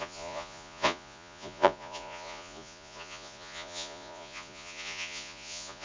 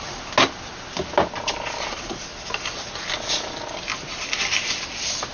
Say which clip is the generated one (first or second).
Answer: first